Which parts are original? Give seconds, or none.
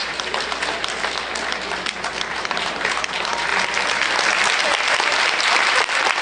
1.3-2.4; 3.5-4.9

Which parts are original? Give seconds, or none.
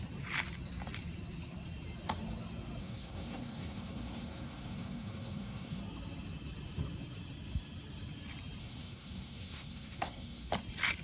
0.0-2.8; 5.8-8.6; 10.5-11.0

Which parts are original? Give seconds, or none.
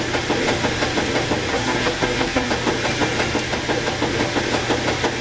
0.0-1.5; 2.5-5.2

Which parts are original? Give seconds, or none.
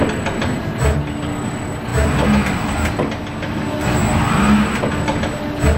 0.0-5.8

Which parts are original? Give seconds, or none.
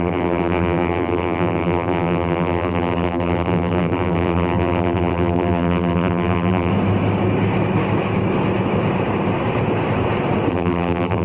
6.7-10.5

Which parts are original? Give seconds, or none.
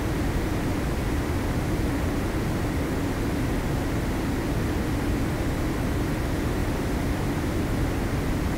0.0-8.6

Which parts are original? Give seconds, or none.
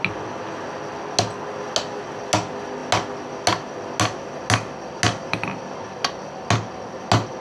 0.0-7.4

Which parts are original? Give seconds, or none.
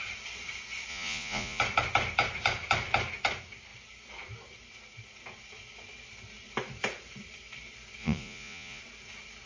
0.0-0.9; 1.6-8.0; 8.8-9.5